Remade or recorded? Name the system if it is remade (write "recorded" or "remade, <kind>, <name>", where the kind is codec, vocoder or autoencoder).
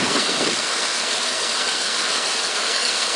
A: remade, codec, SNAC